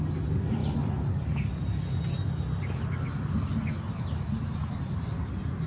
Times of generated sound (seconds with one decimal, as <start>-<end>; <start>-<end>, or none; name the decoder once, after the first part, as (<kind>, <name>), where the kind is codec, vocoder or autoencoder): none